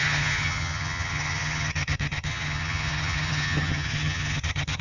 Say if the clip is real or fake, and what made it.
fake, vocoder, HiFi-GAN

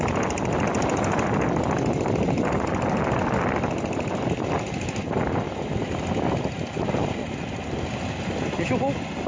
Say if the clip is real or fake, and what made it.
real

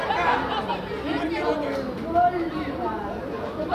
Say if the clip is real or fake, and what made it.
real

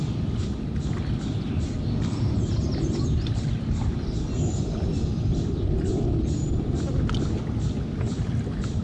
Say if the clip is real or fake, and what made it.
real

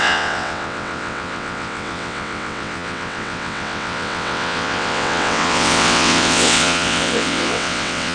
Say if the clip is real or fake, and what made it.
fake, vocoder, WaveNeXt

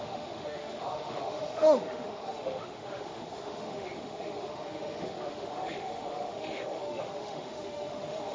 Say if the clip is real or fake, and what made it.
fake, autoencoder, DAC-VAE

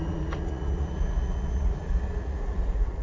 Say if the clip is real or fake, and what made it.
fake, vocoder, Vocos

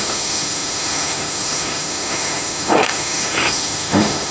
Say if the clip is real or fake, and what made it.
fake, autoencoder, DAC-VAE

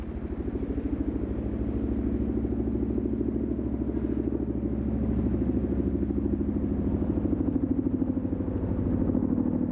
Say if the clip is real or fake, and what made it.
real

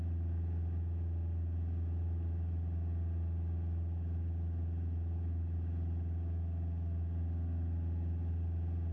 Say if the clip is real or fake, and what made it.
real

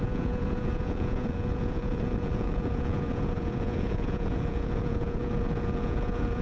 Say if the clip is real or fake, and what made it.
fake, vocoder, Vocos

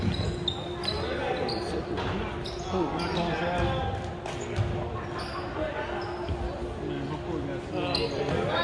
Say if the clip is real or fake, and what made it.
real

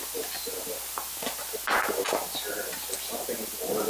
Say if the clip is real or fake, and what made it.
real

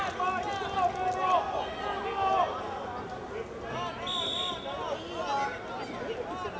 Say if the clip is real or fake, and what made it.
real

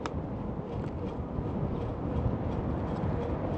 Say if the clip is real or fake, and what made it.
real